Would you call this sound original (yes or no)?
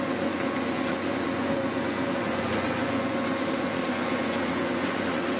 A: no